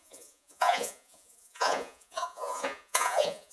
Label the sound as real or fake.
fake